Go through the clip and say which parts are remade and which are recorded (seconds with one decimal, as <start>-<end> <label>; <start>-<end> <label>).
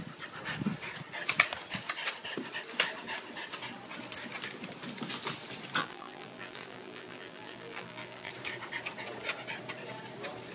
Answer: 0.0-5.8 recorded; 5.8-8.3 remade; 8.3-10.5 recorded